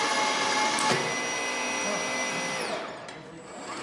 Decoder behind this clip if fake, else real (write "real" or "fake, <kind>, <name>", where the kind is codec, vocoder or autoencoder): real